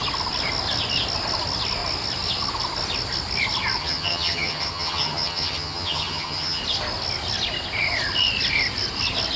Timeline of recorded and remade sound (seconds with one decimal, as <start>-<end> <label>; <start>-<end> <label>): 0.0-3.8 recorded; 3.8-6.6 remade; 6.6-9.4 recorded